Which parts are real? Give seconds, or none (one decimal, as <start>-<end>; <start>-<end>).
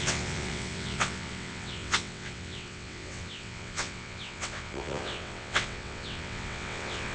none